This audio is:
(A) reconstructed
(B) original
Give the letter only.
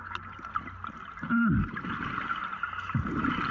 B